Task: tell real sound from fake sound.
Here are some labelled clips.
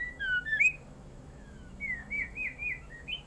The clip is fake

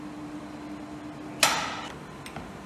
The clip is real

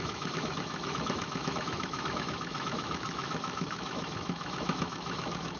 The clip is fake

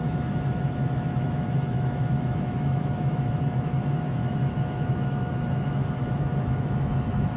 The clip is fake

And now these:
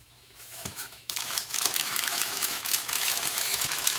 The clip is fake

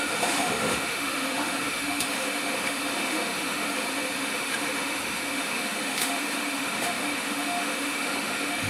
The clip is fake